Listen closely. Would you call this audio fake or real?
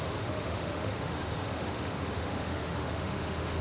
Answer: fake